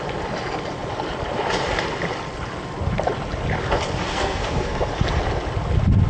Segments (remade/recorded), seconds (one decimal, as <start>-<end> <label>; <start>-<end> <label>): 0.0-4.1 recorded; 4.1-4.9 remade; 4.9-6.1 recorded